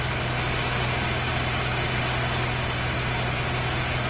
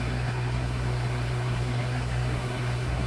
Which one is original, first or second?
first